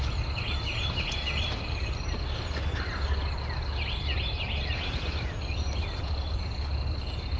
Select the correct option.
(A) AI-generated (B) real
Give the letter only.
B